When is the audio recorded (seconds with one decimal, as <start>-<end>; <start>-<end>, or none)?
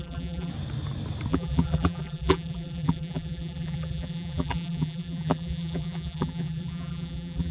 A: 0.5-1.3